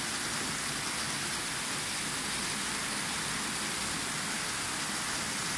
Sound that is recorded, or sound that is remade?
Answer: recorded